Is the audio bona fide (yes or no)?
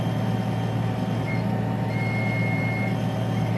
yes